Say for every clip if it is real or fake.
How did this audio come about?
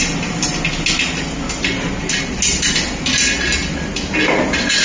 real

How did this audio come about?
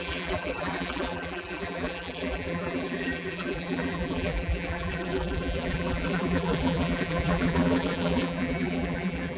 fake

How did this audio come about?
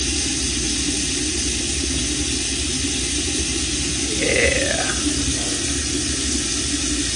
real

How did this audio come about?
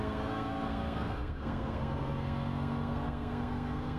fake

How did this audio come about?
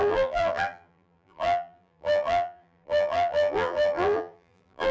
fake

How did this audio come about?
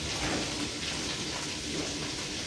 fake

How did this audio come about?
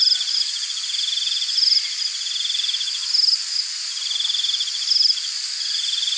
real